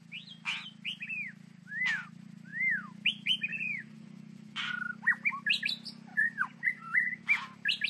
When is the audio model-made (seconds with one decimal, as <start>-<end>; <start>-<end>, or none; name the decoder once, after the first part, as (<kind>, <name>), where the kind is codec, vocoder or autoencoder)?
3.5-4.7 (vocoder, Vocos); 6.1-7.2